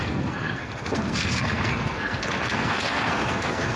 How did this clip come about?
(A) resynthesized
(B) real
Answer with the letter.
A